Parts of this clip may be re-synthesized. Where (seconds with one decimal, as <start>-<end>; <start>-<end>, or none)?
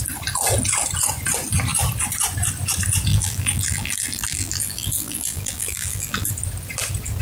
3.1-6.3